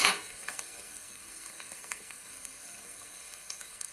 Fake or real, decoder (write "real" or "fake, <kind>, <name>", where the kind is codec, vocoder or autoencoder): fake, codec, SNAC